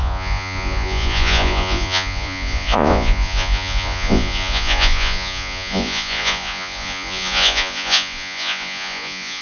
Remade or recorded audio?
remade